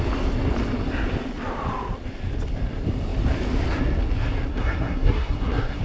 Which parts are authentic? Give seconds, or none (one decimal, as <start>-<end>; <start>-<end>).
0.0-4.5